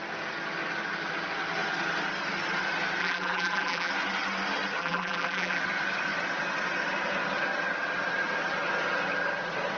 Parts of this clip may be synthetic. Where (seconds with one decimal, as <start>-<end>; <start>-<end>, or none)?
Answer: 3.0-3.9; 4.8-5.6